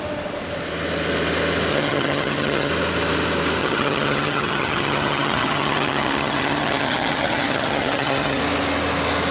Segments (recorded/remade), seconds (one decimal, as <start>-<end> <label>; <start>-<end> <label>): 0.0-1.7 recorded; 1.7-2.7 remade; 2.7-3.6 recorded; 3.6-8.4 remade; 8.4-9.3 recorded